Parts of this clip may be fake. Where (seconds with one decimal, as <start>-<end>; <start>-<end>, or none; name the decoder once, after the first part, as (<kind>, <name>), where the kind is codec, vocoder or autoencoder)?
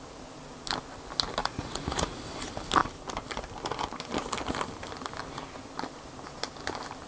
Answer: 1.4-2.2 (vocoder, Vocos)